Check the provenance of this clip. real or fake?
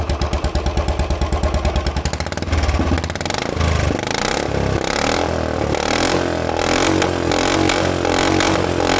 real